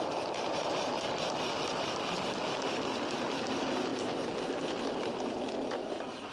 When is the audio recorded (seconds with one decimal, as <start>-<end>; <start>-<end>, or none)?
0.0-6.3